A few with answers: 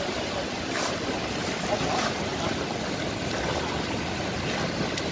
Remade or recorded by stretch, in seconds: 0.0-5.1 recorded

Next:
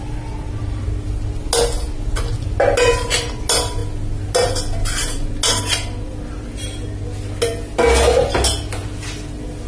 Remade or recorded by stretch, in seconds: 0.0-9.7 recorded